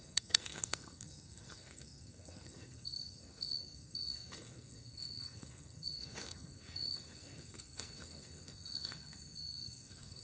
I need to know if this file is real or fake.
fake